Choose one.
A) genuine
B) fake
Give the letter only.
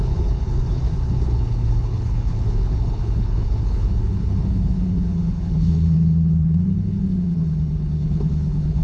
B